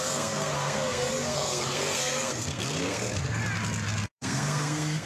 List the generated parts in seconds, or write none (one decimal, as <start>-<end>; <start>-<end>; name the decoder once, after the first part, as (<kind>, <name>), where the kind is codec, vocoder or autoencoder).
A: 0.0-3.4 (codec, SNAC); 4.1-5.1